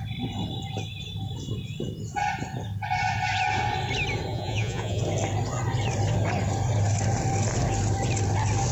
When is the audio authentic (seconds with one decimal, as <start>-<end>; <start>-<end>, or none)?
0.0-4.3; 5.0-8.7